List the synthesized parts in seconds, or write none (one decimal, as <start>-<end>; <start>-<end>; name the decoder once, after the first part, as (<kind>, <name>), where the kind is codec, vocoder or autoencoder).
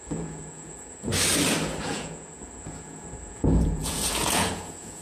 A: 0.0-1.1 (vocoder, Vocos); 1.8-5.0